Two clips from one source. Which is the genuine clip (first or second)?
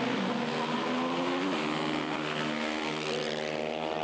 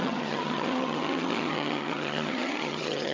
first